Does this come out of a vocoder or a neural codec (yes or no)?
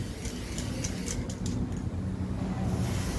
no